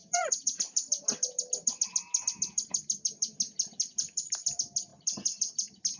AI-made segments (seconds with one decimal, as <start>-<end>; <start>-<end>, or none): 0.0-0.6